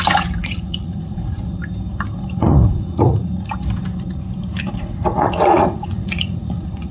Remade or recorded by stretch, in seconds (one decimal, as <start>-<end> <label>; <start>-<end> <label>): 0.0-1.6 remade; 1.6-2.2 recorded; 2.2-3.3 remade; 3.3-4.8 recorded; 4.8-6.9 remade